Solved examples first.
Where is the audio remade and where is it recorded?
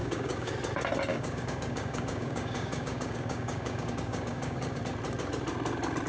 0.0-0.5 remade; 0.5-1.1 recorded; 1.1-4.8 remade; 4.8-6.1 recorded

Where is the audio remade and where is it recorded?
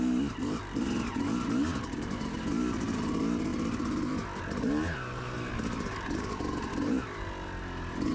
0.0-8.1 recorded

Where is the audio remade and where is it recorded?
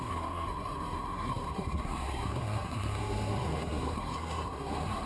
0.0-5.1 remade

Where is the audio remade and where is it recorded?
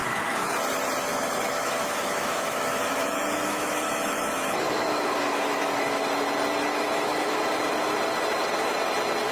0.0-0.5 remade; 0.5-1.1 recorded; 1.1-6.0 remade; 6.0-6.7 recorded; 6.7-7.4 remade; 7.4-9.3 recorded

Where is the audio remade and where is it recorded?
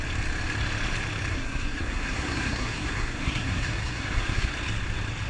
0.0-1.3 recorded; 1.3-4.5 remade; 4.5-5.3 recorded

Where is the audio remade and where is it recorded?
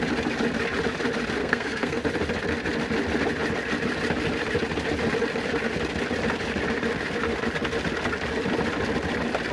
0.0-1.4 recorded; 1.4-2.0 remade; 2.0-9.5 recorded